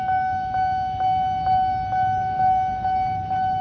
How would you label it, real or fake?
real